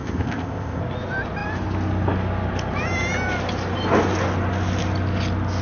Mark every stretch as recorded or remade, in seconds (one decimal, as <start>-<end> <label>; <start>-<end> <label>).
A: 0.0-0.8 remade; 0.8-5.6 recorded